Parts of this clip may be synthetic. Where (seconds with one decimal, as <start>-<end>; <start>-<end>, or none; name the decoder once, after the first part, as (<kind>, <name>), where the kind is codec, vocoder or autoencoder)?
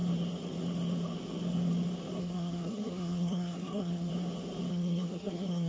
2.2-4.1 (codec, SNAC); 4.7-5.7